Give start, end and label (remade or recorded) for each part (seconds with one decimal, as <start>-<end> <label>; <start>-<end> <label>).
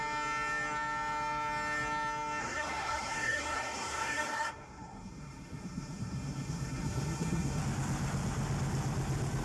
0.0-2.4 recorded; 2.4-7.6 remade; 7.6-9.4 recorded